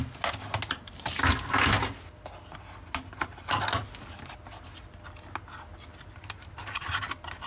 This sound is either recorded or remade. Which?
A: recorded